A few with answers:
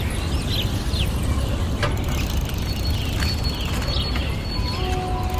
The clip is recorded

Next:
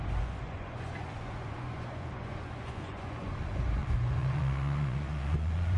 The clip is remade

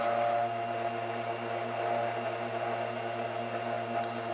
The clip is recorded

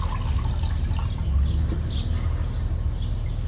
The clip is recorded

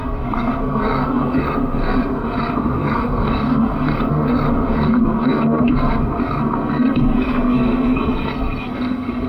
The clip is remade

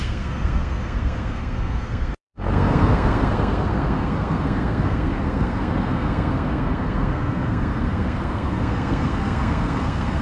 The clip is remade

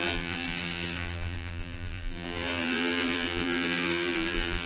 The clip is remade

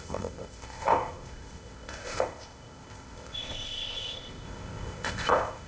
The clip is remade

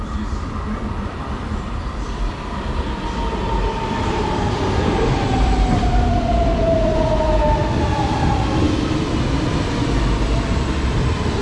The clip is remade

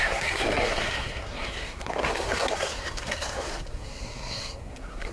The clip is remade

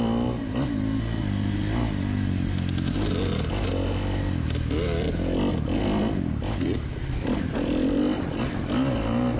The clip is recorded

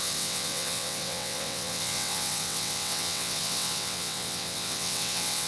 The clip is remade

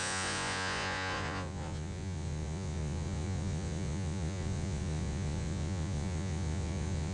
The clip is remade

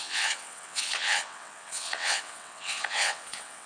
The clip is remade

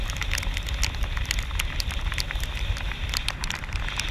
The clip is recorded